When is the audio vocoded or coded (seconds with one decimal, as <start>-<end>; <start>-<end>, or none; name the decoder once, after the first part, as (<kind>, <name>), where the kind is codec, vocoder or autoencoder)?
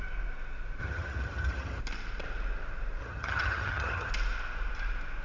0.8-1.8 (vocoder, HiFi-GAN); 3.0-4.1